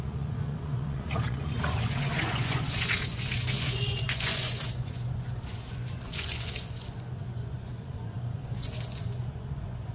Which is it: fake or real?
fake